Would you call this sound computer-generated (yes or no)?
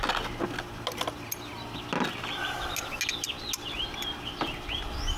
no